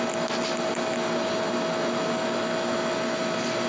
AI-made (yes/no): no